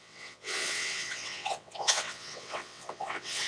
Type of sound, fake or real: fake